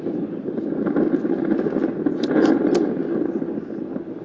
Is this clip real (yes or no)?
yes